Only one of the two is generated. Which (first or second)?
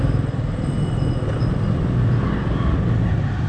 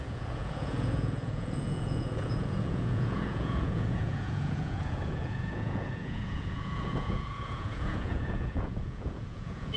second